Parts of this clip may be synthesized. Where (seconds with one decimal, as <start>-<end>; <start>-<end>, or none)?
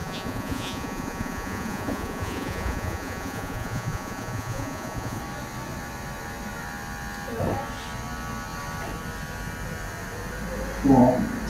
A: 0.0-5.2